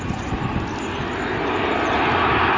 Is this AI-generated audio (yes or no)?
no